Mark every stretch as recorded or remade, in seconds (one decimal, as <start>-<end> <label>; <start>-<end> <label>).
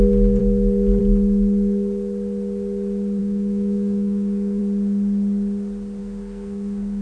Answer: 0.0-3.2 recorded; 3.2-4.6 remade; 4.6-6.0 recorded; 6.0-7.0 remade